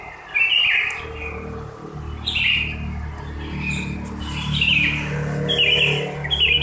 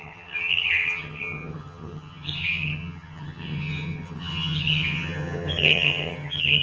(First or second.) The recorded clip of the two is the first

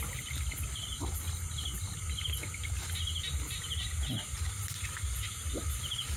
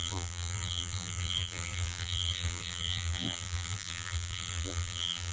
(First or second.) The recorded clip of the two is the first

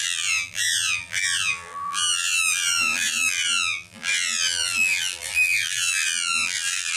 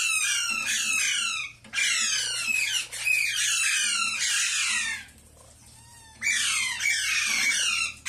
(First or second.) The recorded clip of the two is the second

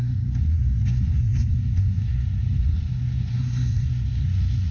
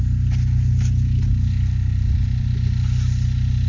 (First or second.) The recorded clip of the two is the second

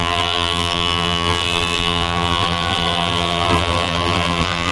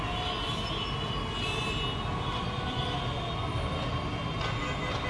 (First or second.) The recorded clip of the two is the second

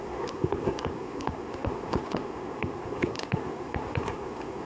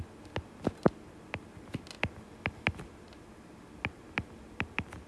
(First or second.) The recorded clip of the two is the second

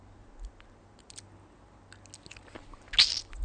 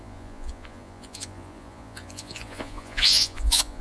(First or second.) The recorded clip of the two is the first